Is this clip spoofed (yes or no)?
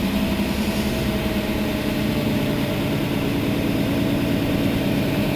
yes